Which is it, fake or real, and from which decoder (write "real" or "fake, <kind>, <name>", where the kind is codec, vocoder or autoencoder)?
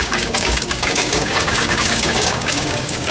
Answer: fake, codec, DAC